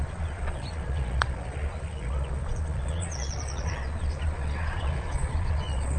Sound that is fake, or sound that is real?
fake